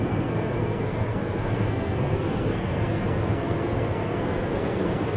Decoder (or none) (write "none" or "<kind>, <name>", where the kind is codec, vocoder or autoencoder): codec, SNAC